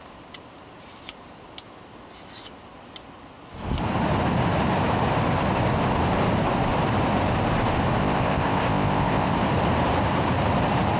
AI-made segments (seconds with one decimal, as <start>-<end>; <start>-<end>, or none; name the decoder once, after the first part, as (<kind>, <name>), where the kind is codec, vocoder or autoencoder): 8.0-9.3 (codec, ZipCodec)